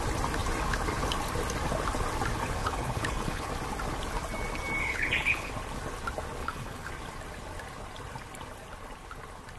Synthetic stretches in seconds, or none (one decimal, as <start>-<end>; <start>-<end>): 2.6-3.5; 4.8-5.5; 6.4-6.9